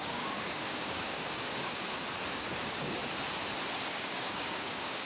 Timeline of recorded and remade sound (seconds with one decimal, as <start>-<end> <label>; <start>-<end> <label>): 0.0-1.8 remade; 1.8-2.6 recorded; 2.6-3.0 remade; 3.0-3.9 recorded; 3.9-5.1 remade